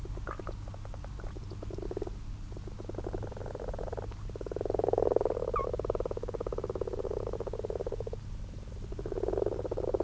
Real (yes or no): yes